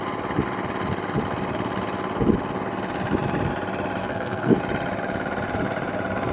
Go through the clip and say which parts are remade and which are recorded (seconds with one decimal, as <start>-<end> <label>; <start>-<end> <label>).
0.0-4.0 recorded; 4.0-4.6 remade; 4.6-6.3 recorded